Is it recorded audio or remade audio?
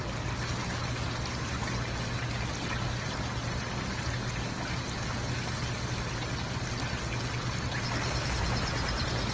recorded